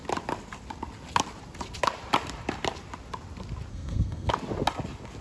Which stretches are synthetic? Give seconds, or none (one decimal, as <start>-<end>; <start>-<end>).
3.7-4.3